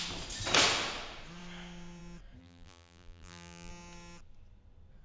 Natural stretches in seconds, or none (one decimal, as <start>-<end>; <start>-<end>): 0.0-2.4; 3.7-5.0